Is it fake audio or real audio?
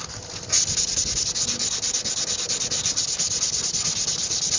real